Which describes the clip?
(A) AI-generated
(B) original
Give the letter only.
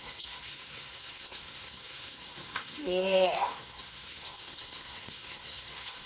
A